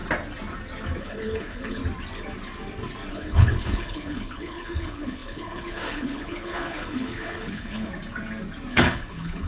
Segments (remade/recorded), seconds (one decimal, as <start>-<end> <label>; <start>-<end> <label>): 0.0-1.0 recorded; 1.0-1.8 remade; 1.8-3.1 recorded; 3.1-7.9 remade; 7.9-8.7 recorded; 8.7-9.5 remade